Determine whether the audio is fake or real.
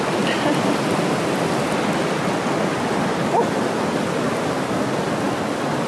real